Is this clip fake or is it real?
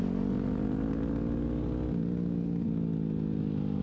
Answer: real